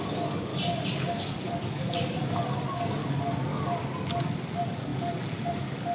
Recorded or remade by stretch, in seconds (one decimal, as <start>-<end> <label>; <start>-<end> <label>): 0.0-0.5 remade; 0.5-1.1 recorded; 1.1-3.0 remade; 3.0-3.5 recorded; 3.5-5.9 remade